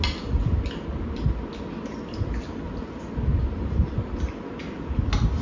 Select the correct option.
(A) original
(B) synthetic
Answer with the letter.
A